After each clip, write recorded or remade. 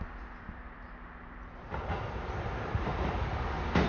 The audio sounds recorded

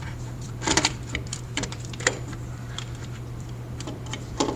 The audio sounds remade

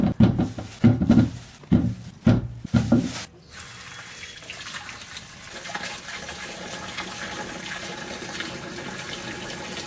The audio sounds recorded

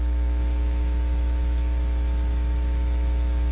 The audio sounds remade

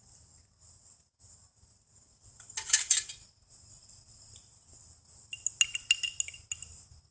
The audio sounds recorded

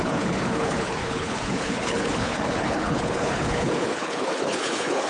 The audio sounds remade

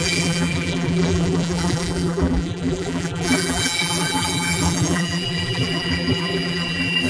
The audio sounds remade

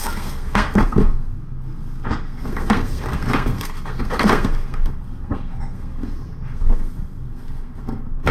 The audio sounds remade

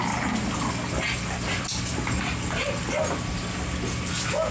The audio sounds recorded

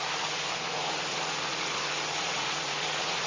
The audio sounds remade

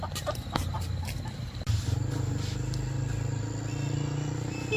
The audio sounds recorded